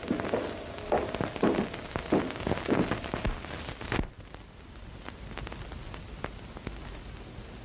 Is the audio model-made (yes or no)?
no